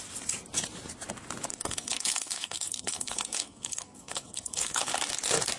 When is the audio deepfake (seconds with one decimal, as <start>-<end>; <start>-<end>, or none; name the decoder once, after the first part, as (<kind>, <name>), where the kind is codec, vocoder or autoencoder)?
1.5-4.9 (codec, SNAC)